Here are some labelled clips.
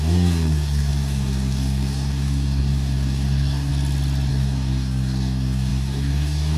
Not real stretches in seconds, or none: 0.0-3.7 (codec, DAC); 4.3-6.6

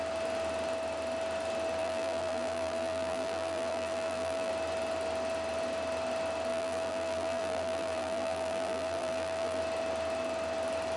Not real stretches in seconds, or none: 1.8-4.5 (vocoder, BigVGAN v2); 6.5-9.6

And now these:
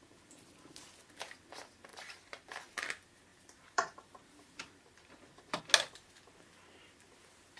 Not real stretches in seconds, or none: 1.9-2.6 (vocoder, BigVGAN v2); 3.3-5.6

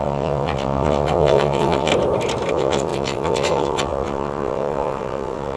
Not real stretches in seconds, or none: 0.0-1.9 (vocoder, WaveNeXt); 2.5-5.6

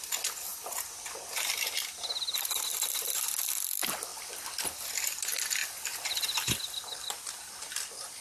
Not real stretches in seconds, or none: 0.5-1.5 (vocoder, BigVGAN v2); 4.1-5.0; 5.6-8.2